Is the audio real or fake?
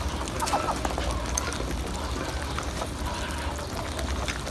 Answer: real